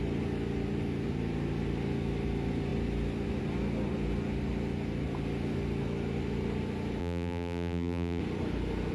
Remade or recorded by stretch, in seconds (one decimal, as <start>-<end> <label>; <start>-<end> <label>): 0.0-7.0 recorded; 7.0-8.2 remade; 8.2-8.9 recorded